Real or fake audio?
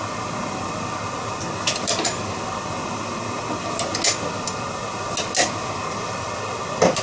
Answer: real